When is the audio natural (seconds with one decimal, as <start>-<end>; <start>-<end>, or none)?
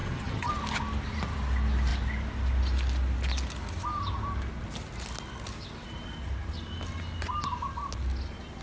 0.5-8.6